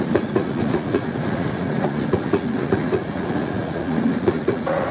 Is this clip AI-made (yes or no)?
yes